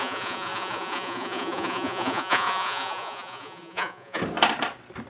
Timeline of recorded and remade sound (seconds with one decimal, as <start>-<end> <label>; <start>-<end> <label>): 0.0-4.2 remade; 4.2-5.1 recorded